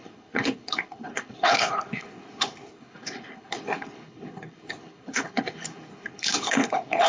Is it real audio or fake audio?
fake